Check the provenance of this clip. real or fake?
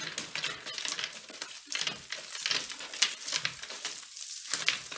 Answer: real